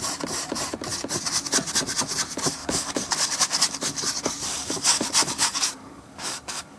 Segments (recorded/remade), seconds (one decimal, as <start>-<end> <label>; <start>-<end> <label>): 0.0-2.6 recorded; 2.6-6.8 remade